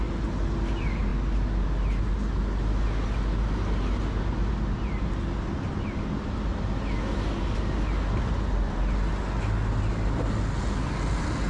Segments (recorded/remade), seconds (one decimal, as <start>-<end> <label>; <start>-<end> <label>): 0.0-11.5 recorded